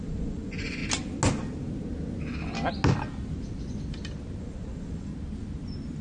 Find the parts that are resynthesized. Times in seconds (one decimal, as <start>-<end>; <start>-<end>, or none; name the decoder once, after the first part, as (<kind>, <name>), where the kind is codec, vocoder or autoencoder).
0.0-0.8 (vocoder, Vocos); 4.4-5.1